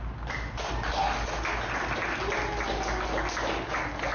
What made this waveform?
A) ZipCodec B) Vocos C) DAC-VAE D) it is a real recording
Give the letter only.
D